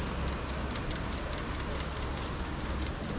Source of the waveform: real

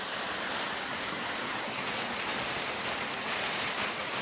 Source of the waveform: real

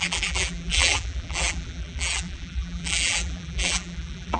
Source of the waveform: fake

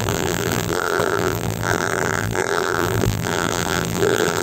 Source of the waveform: fake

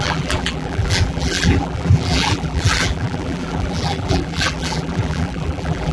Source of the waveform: fake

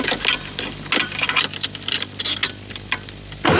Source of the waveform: real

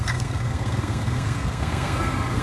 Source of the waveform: fake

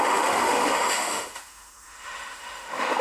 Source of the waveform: fake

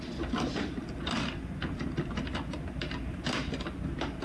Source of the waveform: fake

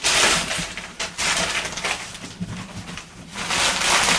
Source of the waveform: real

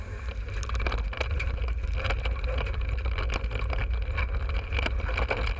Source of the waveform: real